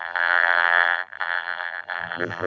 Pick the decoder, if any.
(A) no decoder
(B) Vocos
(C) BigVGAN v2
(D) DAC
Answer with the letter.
C